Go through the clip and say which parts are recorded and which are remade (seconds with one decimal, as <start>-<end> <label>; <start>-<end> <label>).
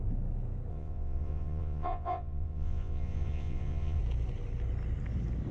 0.0-0.7 recorded; 0.7-4.0 remade; 4.0-5.5 recorded